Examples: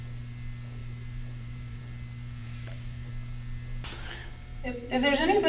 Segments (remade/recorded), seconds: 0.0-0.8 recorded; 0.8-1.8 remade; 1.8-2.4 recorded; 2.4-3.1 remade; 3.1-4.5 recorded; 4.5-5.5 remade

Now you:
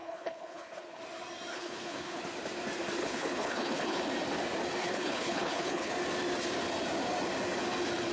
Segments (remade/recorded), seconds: 0.0-1.0 remade; 1.0-1.5 recorded; 1.5-2.2 remade; 2.2-3.0 recorded; 3.0-4.0 remade; 4.0-4.8 recorded; 4.8-5.9 remade; 5.9-8.1 recorded

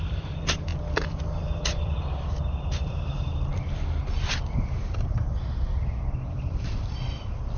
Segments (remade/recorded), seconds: 0.0-0.7 remade; 0.7-1.8 recorded; 1.8-3.5 remade; 3.5-6.4 recorded; 6.4-7.6 remade

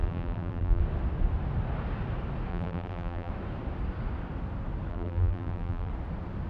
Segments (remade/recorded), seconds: 0.0-0.8 remade; 0.8-2.5 recorded; 2.5-3.3 remade; 3.3-4.9 recorded; 4.9-5.9 remade; 5.9-6.5 recorded